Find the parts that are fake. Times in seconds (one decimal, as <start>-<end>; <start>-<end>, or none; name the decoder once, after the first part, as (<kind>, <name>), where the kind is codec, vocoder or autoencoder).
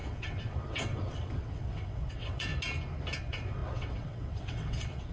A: 0.0-2.5 (vocoder, WaveNeXt); 3.2-5.1